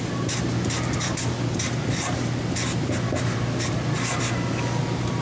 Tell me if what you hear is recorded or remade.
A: recorded